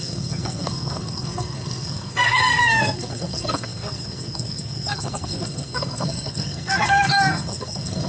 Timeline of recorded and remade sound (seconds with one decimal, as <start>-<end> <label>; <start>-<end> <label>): 0.0-8.1 remade

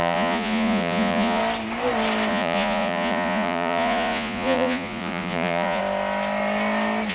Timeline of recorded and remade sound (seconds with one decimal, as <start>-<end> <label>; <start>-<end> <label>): 0.0-1.4 remade; 1.4-2.3 recorded; 2.3-5.8 remade; 5.8-7.1 recorded

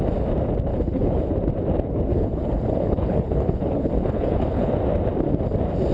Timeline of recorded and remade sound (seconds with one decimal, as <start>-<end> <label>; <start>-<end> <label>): 0.0-0.7 recorded; 0.7-1.3 remade; 1.3-2.1 recorded; 2.1-4.7 remade; 4.7-5.9 recorded

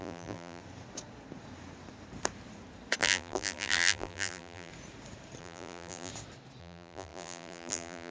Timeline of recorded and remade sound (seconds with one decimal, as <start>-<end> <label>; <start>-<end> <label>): 0.0-0.6 remade; 0.6-3.0 recorded; 3.0-4.7 remade; 4.7-5.4 recorded; 5.4-6.1 remade; 6.1-6.6 recorded; 6.6-8.1 remade

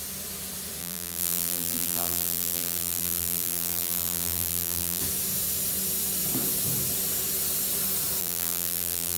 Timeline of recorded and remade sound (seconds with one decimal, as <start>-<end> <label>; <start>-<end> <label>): 0.0-0.8 recorded; 0.8-5.0 remade; 5.0-8.2 recorded; 8.2-9.2 remade